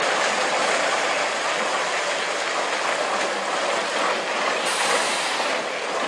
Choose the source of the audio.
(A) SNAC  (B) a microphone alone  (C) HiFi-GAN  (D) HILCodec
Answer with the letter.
B